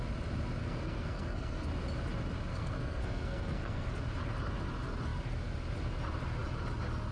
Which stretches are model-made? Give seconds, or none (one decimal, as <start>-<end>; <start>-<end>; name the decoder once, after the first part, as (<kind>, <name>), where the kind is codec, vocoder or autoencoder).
0.6-1.7 (codec, SNAC); 2.5-4.0